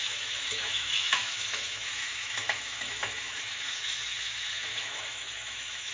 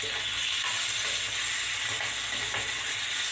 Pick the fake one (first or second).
first